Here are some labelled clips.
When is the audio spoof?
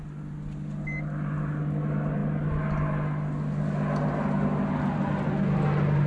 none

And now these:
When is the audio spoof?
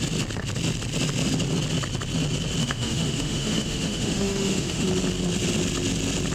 2.6-4.9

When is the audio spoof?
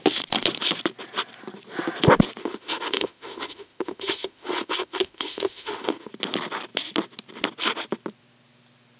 2.4-6.1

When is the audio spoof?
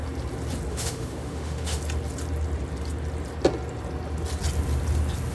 0.7-1.8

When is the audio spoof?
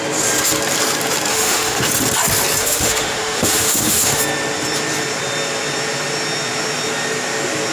1.3-1.8; 2.6-4.2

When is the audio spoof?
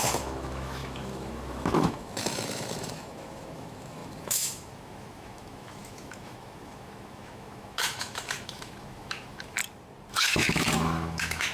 0.0-9.6; 10.1-11.5